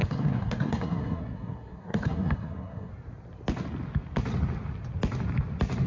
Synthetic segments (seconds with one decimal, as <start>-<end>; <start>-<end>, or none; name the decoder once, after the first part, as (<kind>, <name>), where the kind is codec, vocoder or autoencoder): 0.0-2.9 (codec, SNAC)